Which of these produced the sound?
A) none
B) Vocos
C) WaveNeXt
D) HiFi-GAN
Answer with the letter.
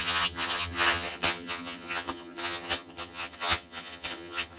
D